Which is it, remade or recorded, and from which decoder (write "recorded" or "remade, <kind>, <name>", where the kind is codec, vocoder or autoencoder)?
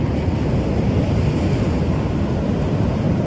recorded